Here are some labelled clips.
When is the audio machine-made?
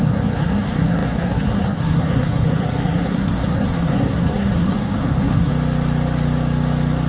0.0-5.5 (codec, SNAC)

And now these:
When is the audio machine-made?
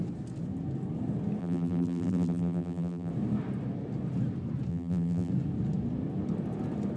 1.4-3.1 (vocoder, BigVGAN v2); 4.7-5.3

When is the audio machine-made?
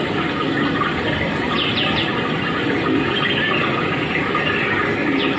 none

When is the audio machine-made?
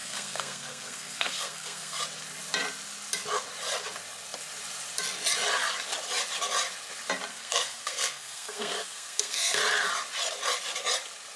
0.0-2.0 (codec, SNAC); 7.3-9.6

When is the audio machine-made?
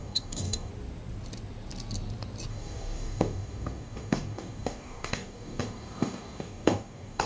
0.0-0.7 (codec, DAC); 2.5-7.3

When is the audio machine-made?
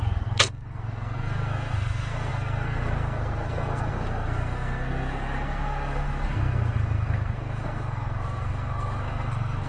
0.0-9.7 (codec, SNAC)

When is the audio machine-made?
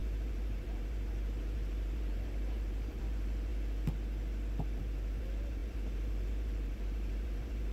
0.0-3.5 (vocoder, BigVGAN v2); 4.8-7.7